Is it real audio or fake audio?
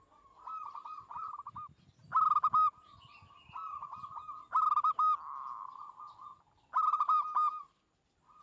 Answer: real